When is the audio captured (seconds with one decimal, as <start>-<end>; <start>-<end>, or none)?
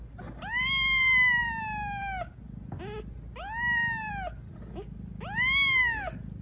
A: 0.0-6.4